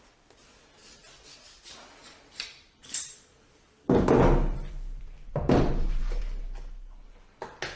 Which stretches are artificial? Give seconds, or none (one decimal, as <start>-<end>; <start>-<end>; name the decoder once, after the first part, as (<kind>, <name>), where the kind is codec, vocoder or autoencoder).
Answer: 2.0-6.2 (vocoder, BigVGAN v2)